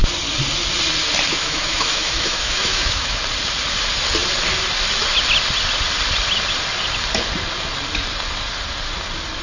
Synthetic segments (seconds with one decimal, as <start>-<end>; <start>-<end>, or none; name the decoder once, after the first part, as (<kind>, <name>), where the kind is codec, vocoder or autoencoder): 1.3-3.2 (autoencoder, DAC-VAE)